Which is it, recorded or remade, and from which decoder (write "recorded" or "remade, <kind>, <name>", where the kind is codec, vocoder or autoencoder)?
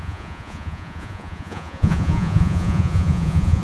remade, vocoder, Vocos